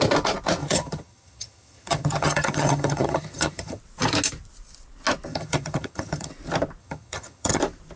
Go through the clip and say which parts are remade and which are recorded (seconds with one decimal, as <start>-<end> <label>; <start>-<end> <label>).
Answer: 0.0-0.6 recorded; 0.6-3.8 remade; 3.8-5.3 recorded; 5.3-6.3 remade; 6.3-6.8 recorded; 6.8-7.6 remade; 7.6-8.0 recorded